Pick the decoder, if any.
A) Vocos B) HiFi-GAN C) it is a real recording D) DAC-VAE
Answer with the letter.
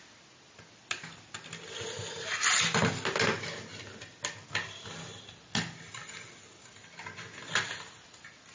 C